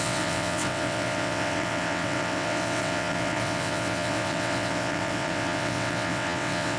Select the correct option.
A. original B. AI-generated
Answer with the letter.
B